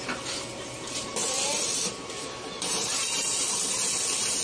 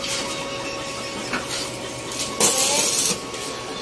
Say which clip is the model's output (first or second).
first